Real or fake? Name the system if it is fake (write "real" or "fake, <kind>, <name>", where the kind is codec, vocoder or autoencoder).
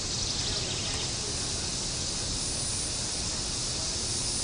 real